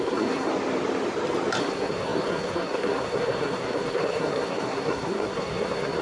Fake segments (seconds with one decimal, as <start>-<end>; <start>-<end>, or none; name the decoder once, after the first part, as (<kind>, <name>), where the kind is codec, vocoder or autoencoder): 0.0-0.5 (codec, SNAC); 1.6-6.0

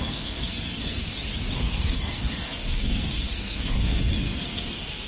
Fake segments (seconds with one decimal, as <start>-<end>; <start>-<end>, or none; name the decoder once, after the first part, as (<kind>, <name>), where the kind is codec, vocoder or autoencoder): 0.0-1.1 (codec, SNAC); 1.6-5.1

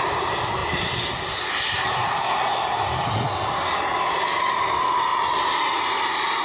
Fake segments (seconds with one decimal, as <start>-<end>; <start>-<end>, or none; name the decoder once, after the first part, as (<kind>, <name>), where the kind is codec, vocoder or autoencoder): none

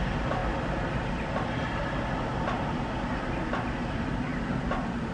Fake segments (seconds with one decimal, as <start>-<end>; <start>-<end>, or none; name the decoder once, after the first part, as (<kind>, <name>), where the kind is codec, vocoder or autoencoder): none

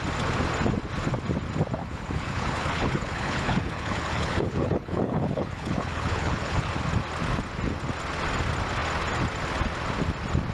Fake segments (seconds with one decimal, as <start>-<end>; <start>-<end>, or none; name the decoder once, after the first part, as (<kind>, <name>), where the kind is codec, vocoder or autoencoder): 1.8-6.7 (codec, HILCodec)

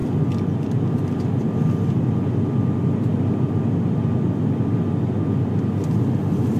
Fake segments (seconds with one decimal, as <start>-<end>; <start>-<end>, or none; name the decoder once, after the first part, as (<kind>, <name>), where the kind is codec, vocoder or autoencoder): none